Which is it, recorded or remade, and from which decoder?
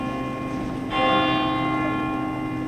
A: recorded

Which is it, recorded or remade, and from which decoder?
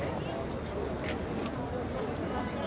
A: recorded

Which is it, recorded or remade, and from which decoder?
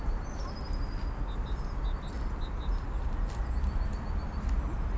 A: recorded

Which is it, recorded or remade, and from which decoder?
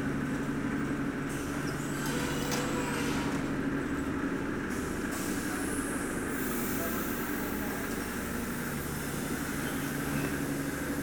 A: recorded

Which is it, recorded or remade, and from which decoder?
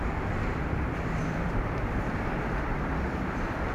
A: remade, vocoder, BigVGAN v2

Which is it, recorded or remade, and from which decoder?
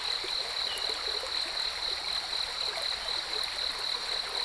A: recorded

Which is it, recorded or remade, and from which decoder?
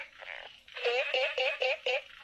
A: remade, autoencoder, DAC-VAE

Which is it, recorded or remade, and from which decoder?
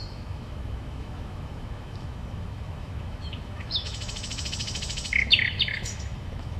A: remade, autoencoder, DAC-VAE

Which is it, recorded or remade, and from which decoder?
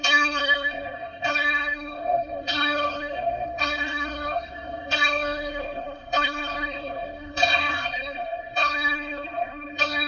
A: remade, codec, SNAC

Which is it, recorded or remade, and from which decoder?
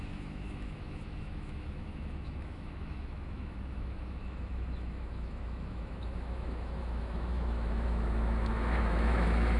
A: remade, autoencoder, DAC-VAE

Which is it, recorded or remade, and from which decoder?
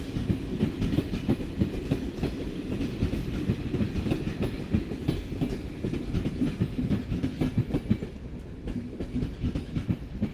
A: recorded